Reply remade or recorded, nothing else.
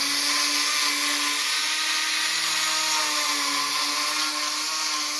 recorded